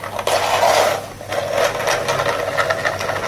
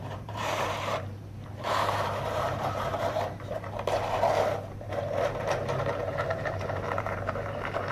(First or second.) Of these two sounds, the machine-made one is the second